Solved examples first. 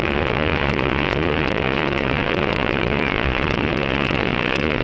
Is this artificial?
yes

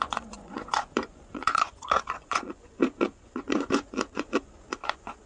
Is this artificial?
yes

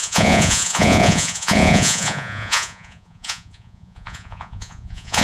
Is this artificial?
yes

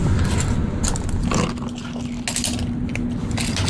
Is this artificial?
no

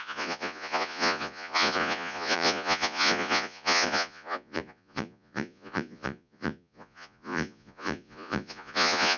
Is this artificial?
yes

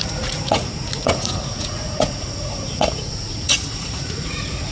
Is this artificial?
yes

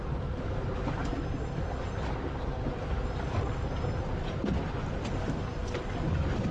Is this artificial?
no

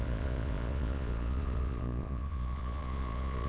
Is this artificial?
yes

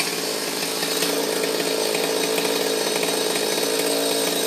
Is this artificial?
no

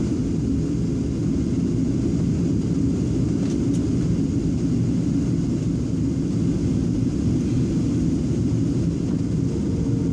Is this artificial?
no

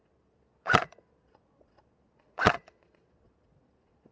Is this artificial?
yes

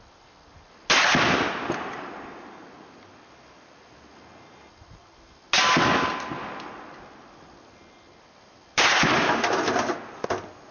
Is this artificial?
no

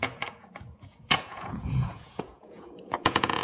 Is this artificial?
yes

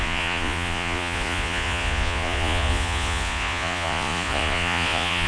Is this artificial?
yes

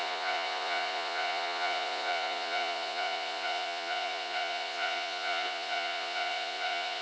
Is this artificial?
yes